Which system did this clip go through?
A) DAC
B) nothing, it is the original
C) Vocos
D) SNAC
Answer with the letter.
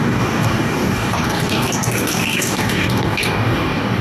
A